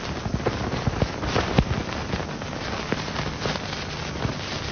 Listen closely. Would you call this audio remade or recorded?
recorded